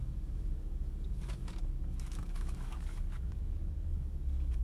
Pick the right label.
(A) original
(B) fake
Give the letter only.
B